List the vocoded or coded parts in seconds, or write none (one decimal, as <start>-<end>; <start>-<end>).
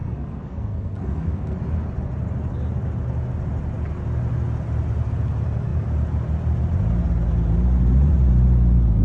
0.0-1.6